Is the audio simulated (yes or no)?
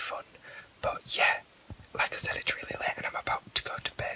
no